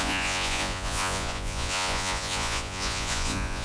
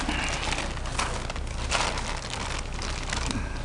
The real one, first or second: second